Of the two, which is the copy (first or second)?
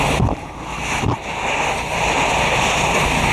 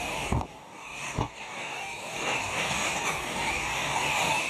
second